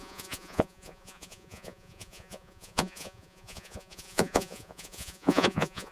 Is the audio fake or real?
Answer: fake